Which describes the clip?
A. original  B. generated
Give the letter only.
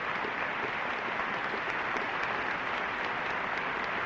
A